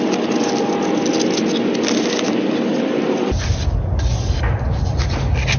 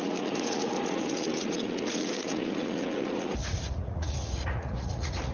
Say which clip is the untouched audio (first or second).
first